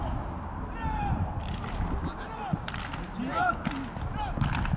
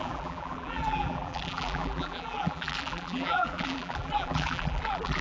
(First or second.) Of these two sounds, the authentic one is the first